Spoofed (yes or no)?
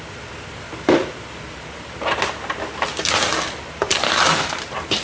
no